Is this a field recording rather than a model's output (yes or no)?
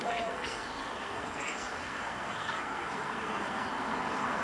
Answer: no